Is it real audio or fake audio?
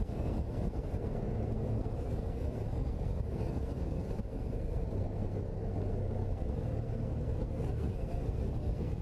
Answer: fake